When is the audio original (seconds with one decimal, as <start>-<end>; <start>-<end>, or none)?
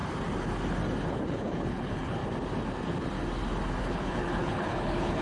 0.0-1.1; 2.2-3.8